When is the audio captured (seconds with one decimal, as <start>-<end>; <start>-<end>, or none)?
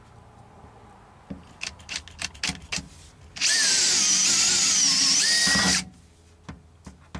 0.0-7.2